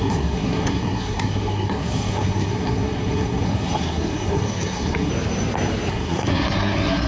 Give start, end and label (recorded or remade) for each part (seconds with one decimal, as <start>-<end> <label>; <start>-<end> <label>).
0.0-5.1 remade; 5.1-5.9 recorded; 5.9-7.1 remade